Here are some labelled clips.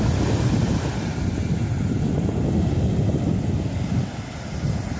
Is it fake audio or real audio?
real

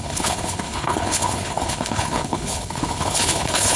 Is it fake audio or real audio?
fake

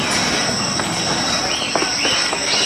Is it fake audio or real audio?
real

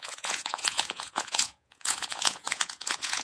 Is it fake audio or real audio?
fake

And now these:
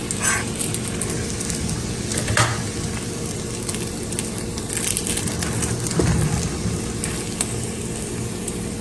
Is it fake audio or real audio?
real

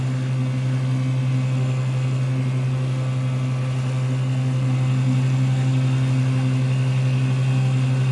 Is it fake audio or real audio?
real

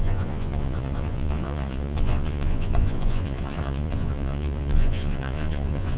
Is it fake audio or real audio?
fake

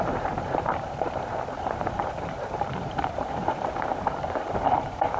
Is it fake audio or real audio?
fake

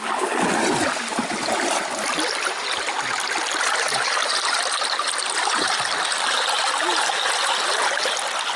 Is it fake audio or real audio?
real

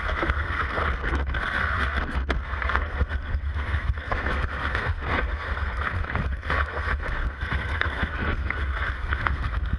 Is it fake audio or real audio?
fake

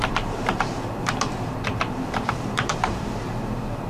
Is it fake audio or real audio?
fake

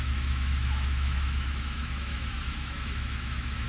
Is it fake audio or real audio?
fake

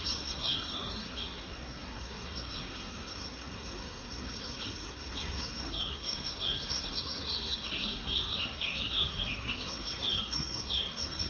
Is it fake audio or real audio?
fake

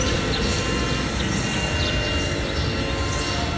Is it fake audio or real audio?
real